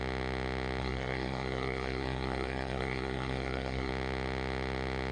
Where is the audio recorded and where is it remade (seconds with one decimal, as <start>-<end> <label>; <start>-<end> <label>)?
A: 0.0-0.8 recorded; 0.8-3.9 remade; 3.9-5.1 recorded

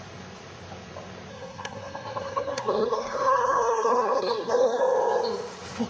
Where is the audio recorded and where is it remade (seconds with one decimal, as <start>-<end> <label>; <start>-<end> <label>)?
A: 0.0-1.3 recorded; 1.3-4.8 remade; 4.8-5.9 recorded

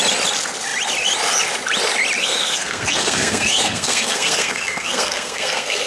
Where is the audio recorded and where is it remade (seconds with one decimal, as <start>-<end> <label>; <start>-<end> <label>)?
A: 0.0-2.2 recorded; 2.2-5.9 remade

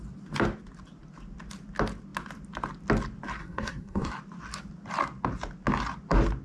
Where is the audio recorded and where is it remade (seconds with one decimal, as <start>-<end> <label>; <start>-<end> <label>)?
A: 0.0-3.4 recorded; 3.4-4.1 remade; 4.1-6.4 recorded